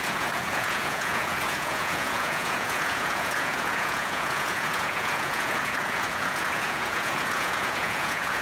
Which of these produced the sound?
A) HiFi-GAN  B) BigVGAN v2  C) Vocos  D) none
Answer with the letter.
C